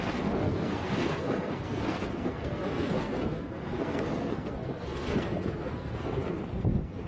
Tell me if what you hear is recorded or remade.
remade